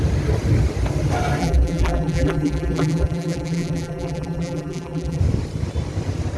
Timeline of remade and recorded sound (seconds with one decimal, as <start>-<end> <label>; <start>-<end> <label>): 0.0-1.4 recorded; 1.4-5.2 remade; 5.2-6.4 recorded